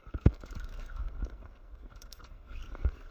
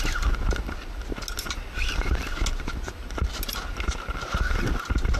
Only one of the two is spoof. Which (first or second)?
first